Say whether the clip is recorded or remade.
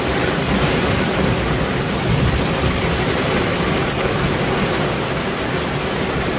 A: recorded